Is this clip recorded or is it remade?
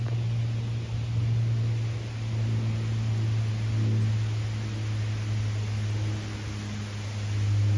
recorded